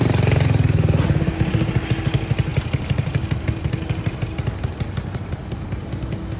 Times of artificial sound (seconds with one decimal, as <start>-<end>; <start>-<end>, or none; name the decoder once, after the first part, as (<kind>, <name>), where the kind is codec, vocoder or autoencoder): none